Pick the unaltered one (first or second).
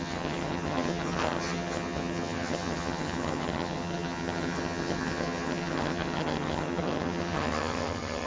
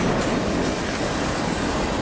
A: second